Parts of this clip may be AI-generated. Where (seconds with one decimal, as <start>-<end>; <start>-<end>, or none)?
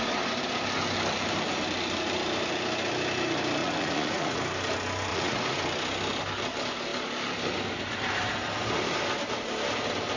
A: 3.6-4.4; 5.1-5.6